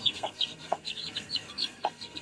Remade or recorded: remade